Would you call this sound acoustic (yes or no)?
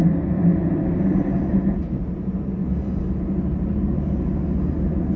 yes